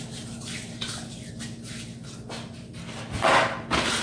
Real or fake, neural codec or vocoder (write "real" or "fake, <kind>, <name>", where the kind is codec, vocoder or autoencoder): real